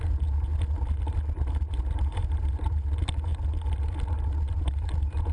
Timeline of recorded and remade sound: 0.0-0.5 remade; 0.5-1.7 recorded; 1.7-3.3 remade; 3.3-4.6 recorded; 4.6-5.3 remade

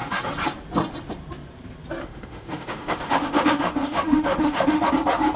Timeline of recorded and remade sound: 0.0-2.0 recorded; 2.0-4.9 remade; 4.9-5.4 recorded

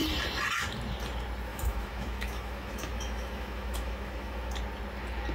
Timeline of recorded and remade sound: 0.0-1.5 recorded; 1.5-4.5 remade; 4.5-5.3 recorded

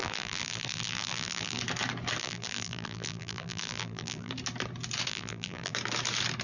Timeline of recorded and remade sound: 0.0-1.6 remade; 1.6-2.2 recorded; 2.2-4.3 remade; 4.3-5.1 recorded; 5.1-5.7 remade; 5.7-6.4 recorded

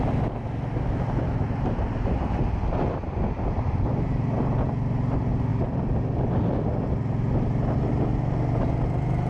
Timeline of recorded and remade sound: 0.0-9.3 recorded

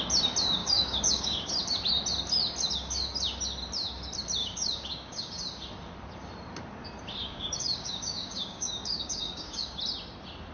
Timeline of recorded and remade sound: 0.0-0.6 recorded; 0.6-1.5 remade; 1.5-4.4 recorded; 4.4-5.4 remade; 5.4-7.2 recorded; 7.2-9.8 remade; 9.8-10.5 recorded

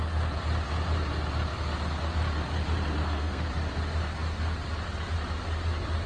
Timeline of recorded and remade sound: 0.0-3.0 recorded; 3.0-3.5 remade; 3.5-6.1 recorded

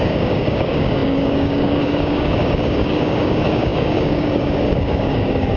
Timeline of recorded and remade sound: 0.0-5.6 remade